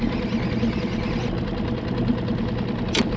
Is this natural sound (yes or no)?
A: yes